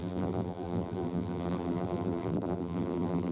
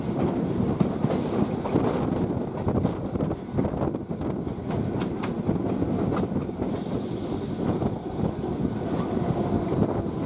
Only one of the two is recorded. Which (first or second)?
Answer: second